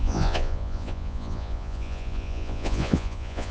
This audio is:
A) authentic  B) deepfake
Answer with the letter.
B